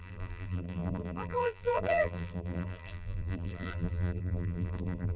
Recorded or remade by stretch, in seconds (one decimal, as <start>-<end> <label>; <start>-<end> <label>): 0.0-5.2 remade